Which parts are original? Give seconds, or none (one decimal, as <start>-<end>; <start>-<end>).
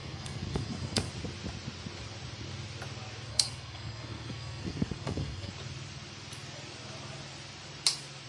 1.1-3.3; 5.5-8.3